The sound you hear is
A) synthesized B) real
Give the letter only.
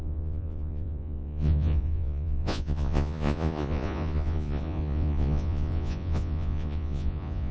A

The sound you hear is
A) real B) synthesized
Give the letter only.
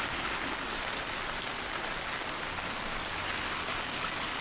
A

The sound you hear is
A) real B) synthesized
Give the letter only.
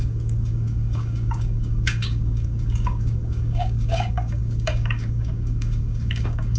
B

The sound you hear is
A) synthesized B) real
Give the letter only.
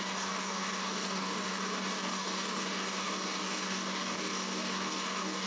A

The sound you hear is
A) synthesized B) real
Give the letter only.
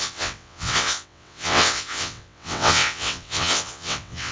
A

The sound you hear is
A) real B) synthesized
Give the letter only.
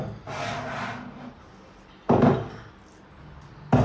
A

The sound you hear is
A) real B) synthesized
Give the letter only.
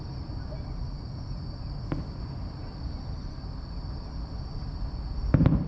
A